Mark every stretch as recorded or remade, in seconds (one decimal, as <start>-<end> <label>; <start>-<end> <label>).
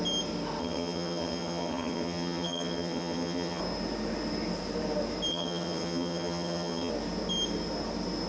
0.0-0.6 recorded; 0.6-3.6 remade; 3.6-5.3 recorded; 5.3-6.9 remade; 6.9-8.3 recorded